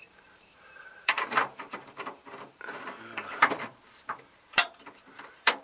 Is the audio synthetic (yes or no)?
yes